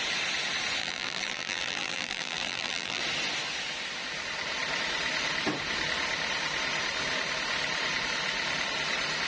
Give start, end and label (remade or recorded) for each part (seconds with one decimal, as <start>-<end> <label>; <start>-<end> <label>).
0.0-0.8 recorded; 0.8-3.0 remade; 3.0-9.3 recorded